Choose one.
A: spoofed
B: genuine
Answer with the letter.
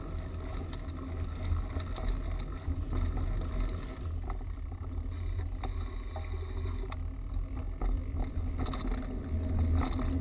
B